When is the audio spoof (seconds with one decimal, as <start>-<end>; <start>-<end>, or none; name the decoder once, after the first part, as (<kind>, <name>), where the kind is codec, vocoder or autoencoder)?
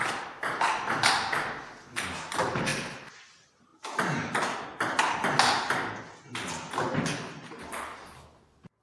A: none